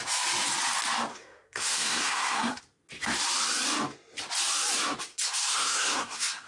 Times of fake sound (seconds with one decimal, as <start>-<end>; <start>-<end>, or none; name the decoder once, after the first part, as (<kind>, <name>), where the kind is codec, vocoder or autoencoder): 1.1-2.6 (codec, SNAC); 5.1-6.5